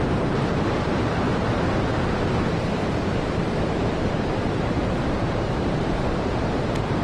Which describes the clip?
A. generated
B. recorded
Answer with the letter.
A